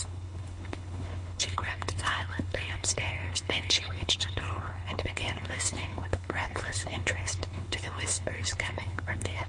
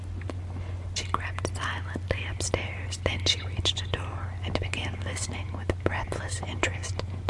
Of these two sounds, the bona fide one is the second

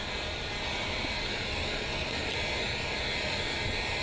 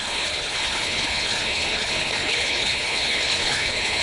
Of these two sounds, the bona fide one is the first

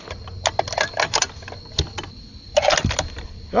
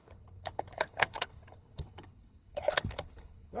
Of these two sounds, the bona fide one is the first